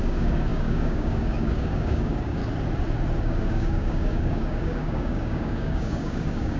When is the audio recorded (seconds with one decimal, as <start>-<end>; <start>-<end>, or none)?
2.4-3.2